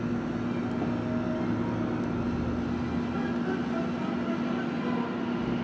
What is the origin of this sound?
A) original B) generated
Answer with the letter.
A